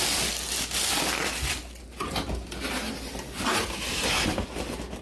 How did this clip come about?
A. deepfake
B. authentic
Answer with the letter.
B